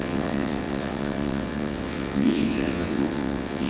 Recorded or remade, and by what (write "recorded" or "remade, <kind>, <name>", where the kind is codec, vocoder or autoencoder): remade, vocoder, WaveNeXt